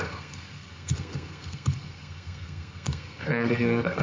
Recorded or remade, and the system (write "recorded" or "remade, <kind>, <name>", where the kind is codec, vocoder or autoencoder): remade, codec, SNAC